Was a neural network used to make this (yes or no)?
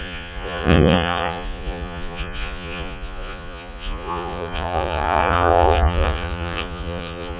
yes